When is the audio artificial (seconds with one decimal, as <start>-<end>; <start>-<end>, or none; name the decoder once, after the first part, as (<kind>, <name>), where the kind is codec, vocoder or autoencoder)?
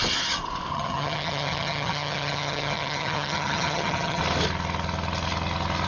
0.7-4.2 (vocoder, HiFi-GAN)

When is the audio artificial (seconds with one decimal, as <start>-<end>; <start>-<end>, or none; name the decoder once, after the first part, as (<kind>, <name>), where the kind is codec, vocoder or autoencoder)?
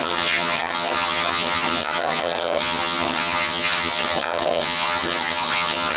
0.0-6.0 (vocoder, HiFi-GAN)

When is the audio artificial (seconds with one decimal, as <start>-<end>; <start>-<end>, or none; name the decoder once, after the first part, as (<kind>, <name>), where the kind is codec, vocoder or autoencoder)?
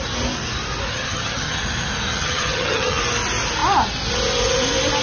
0.9-1.6 (vocoder, HiFi-GAN); 2.1-3.0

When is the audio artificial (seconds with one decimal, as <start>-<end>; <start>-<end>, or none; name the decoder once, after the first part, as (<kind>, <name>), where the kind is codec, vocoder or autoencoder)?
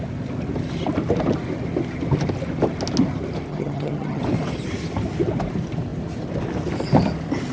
3.5-4.2 (vocoder, HiFi-GAN)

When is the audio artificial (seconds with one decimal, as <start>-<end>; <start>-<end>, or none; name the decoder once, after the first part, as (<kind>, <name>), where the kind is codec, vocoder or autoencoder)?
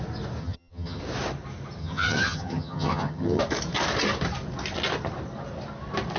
0.4-1.0 (vocoder, HiFi-GAN); 1.8-3.4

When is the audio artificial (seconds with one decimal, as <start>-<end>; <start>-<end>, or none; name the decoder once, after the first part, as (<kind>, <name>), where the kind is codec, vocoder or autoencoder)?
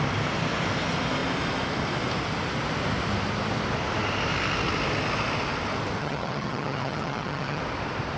6.0-7.6 (vocoder, HiFi-GAN)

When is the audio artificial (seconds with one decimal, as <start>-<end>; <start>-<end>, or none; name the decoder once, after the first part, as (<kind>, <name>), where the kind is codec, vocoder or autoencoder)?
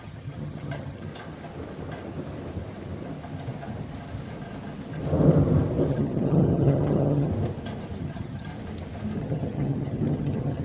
0.0-1.1 (vocoder, HiFi-GAN); 5.9-7.3; 8.0-8.5; 9.2-10.6